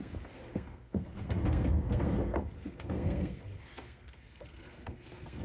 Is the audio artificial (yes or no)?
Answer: yes